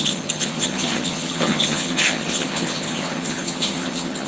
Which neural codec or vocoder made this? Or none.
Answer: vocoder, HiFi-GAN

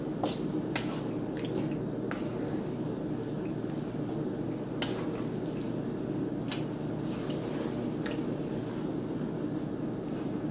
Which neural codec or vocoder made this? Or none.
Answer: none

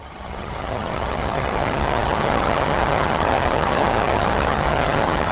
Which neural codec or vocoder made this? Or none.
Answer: vocoder, HiFi-GAN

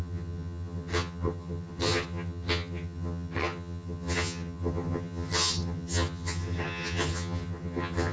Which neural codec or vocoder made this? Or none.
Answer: vocoder, HiFi-GAN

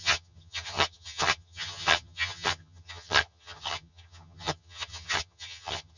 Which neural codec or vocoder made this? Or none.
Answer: vocoder, HiFi-GAN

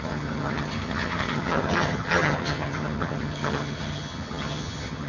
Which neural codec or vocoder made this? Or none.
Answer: vocoder, HiFi-GAN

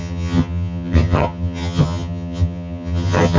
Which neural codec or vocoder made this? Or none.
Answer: vocoder, HiFi-GAN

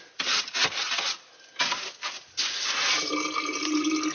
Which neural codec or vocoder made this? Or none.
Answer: none